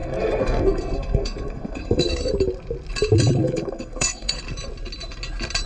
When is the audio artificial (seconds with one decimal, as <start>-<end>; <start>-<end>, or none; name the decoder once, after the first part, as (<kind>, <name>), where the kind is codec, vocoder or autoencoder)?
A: 0.0-2.3 (codec, SNAC); 3.4-4.4